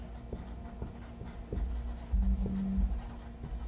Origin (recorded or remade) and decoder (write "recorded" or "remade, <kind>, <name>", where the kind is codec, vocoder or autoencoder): recorded